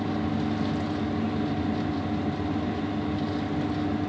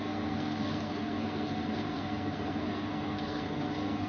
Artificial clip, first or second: second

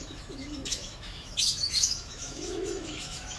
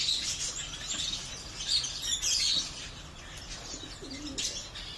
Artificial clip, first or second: first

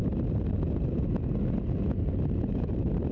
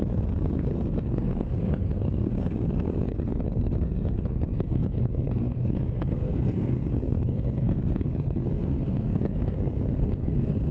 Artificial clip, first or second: second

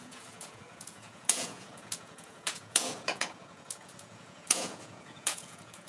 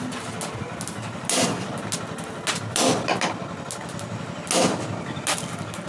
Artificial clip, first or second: first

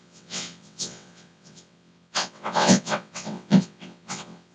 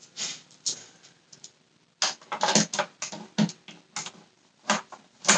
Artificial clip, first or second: first